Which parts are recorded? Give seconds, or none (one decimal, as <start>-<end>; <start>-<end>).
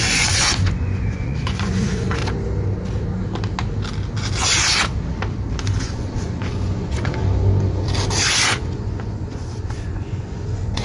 2.2-5.8; 7.2-8.5